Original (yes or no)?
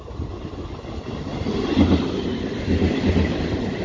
yes